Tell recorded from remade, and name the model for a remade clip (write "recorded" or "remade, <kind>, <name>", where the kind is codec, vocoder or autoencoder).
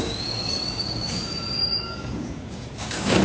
remade, codec, DAC